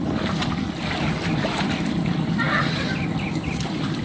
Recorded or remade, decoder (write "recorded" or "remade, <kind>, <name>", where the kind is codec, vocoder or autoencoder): recorded